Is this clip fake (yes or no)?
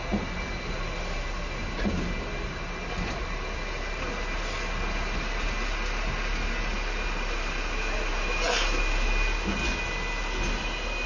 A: no